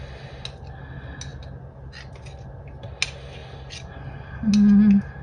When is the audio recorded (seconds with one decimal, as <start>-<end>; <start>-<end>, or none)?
0.0-5.2